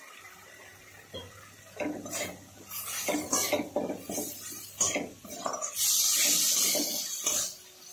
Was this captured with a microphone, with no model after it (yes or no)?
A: yes